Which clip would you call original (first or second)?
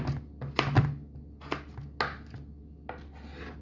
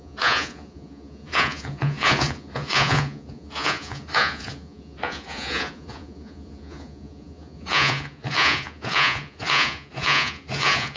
first